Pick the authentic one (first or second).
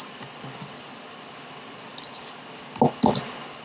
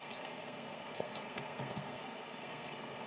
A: first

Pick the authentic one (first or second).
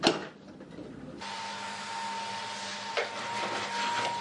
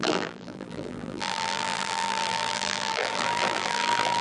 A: first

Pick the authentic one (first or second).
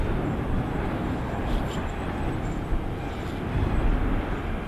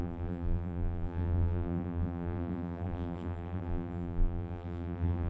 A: first